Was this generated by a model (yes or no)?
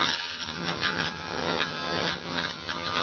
yes